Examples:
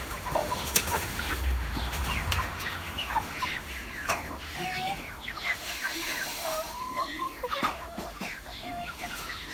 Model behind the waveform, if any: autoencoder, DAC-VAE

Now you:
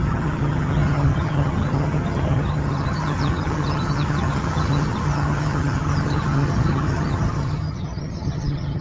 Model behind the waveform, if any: vocoder, HiFi-GAN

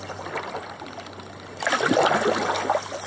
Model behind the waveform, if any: vocoder, BigVGAN v2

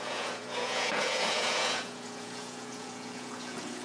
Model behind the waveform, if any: vocoder, Vocos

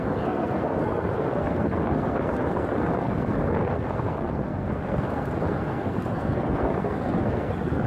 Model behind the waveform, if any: codec, SNAC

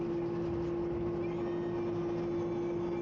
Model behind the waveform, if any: none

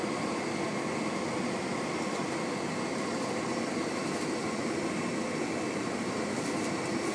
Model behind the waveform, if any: none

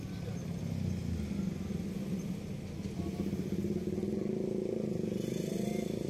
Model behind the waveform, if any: none